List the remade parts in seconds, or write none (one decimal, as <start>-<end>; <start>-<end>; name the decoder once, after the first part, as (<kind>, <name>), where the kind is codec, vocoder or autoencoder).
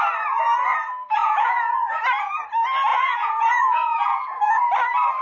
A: 1.2-2.0 (vocoder, Vocos); 2.9-4.6